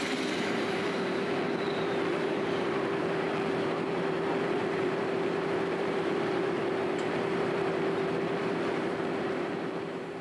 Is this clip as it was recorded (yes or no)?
no